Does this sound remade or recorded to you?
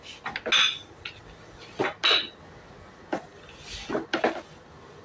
recorded